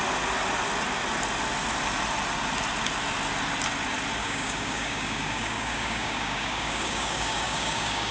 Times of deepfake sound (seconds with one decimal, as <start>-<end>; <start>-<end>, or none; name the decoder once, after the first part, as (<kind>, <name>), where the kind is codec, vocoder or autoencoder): 4.2-8.1 (codec, DAC)